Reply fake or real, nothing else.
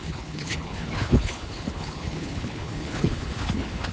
fake